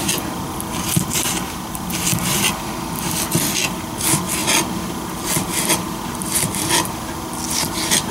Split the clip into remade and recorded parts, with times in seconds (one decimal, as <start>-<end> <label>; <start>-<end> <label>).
0.0-8.1 recorded